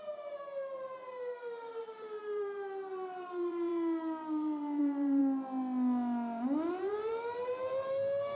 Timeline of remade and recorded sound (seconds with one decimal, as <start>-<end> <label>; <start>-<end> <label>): 0.0-5.2 remade; 5.2-6.9 recorded; 6.9-8.4 remade